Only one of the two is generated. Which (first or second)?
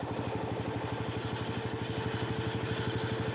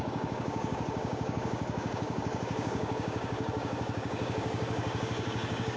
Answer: second